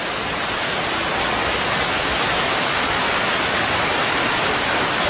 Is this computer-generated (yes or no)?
no